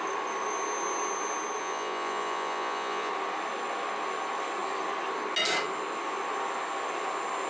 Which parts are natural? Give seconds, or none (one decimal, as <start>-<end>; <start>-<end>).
0.0-1.6; 3.1-7.5